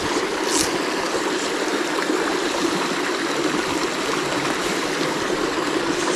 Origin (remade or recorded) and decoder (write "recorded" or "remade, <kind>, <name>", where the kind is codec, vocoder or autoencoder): remade, vocoder, BigVGAN v2